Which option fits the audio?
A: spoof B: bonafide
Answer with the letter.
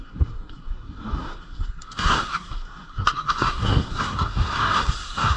A